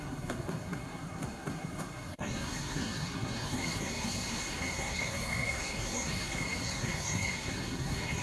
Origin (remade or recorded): remade